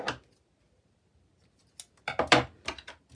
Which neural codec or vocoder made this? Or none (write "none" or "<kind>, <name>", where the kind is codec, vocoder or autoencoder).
none